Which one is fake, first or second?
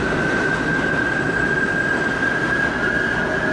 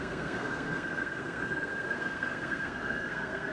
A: second